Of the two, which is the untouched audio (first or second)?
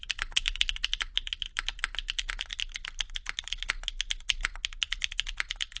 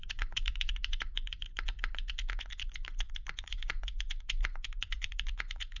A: first